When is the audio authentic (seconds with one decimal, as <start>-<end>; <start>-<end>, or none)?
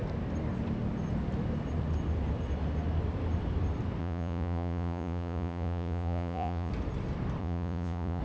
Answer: 0.0-4.0; 6.7-7.4